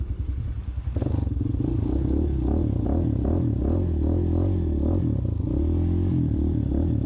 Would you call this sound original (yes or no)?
yes